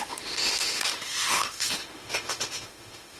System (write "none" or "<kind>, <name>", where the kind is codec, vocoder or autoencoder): autoencoder, DAC-VAE